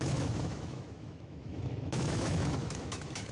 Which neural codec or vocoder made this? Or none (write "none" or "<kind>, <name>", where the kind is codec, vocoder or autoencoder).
autoencoder, DAC-VAE